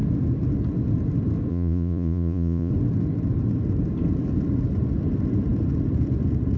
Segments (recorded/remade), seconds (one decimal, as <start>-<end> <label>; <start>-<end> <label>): 0.0-1.5 recorded; 1.5-2.7 remade; 2.7-6.6 recorded